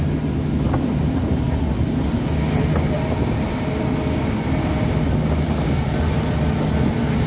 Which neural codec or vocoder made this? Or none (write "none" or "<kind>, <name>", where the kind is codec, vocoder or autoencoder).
none